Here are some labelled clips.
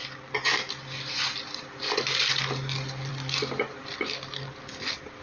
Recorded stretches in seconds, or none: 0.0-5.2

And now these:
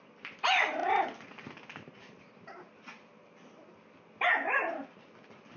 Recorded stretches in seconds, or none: 0.0-5.6